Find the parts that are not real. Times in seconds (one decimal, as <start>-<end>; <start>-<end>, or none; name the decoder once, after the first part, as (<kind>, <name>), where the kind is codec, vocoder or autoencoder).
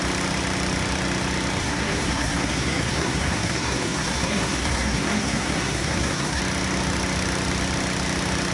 1.6-6.4 (codec, SNAC)